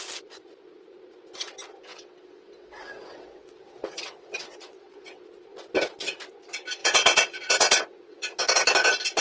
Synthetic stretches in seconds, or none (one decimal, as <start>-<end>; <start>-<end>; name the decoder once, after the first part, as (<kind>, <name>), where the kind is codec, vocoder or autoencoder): 1.9-5.2 (vocoder, WaveNeXt); 6.8-8.4

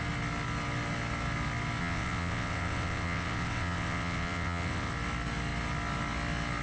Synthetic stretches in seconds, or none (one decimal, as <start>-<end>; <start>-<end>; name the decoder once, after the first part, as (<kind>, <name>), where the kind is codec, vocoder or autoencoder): 1.8-4.9 (vocoder, WaveNeXt)

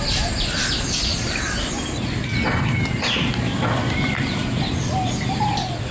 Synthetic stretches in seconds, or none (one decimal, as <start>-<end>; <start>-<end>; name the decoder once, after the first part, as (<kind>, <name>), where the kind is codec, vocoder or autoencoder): 1.1-1.7 (vocoder, BigVGAN v2)

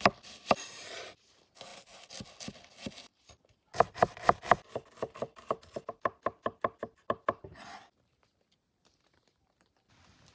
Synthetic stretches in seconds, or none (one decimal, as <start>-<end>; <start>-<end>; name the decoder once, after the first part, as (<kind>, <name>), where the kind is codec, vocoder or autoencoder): none

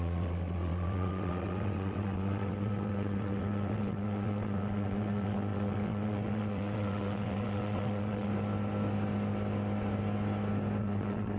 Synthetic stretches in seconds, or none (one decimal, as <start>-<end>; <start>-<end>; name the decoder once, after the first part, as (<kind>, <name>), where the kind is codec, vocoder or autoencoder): 0.0-8.3 (vocoder, WaveNeXt); 10.8-11.4

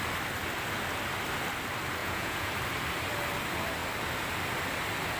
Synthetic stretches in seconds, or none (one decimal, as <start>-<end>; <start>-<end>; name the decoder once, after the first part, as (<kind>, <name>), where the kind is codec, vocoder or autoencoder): 2.0-2.5 (vocoder, Vocos)

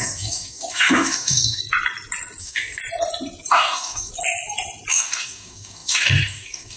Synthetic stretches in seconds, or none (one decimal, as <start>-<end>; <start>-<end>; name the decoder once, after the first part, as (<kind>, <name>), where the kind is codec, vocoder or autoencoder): 0.0-1.6 (codec, DAC); 2.4-2.8; 3.5-4.1; 4.9-6.8